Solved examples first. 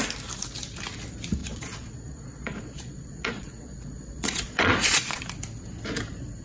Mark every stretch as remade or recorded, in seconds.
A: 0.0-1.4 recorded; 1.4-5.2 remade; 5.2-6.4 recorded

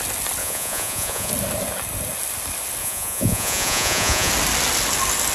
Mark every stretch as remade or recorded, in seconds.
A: 0.0-0.4 recorded; 0.4-1.3 remade; 1.3-2.8 recorded; 2.8-4.3 remade; 4.3-5.3 recorded

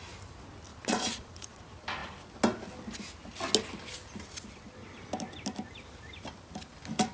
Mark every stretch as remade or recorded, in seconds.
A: 0.0-0.7 recorded; 0.7-1.6 remade; 1.6-7.1 recorded